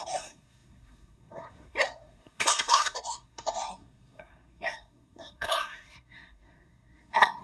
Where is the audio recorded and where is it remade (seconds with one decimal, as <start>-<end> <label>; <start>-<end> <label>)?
0.0-7.4 remade